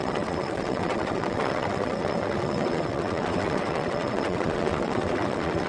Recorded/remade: remade